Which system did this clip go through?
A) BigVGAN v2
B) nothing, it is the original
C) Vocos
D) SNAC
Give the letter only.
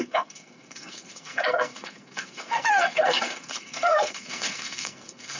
D